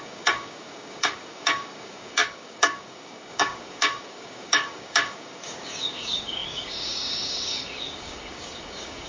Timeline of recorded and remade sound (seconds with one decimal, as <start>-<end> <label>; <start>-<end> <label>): 0.0-9.1 remade